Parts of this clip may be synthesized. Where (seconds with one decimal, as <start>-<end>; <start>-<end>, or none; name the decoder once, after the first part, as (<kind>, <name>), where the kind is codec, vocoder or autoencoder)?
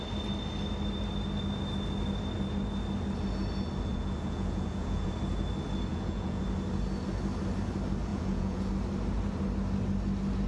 3.9-5.1 (vocoder, Vocos); 5.9-6.4; 8.1-8.7